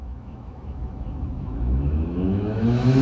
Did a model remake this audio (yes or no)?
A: yes